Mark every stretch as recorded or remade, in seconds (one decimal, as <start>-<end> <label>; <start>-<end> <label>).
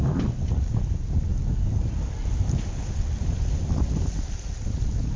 0.0-5.2 recorded